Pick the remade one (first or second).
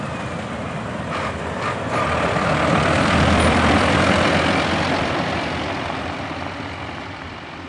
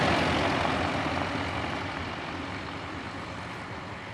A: first